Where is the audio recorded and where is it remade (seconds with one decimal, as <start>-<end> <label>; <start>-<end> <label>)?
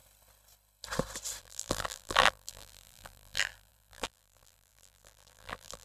0.0-1.4 recorded; 1.4-5.8 remade